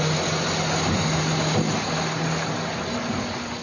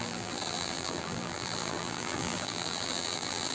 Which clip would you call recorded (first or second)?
first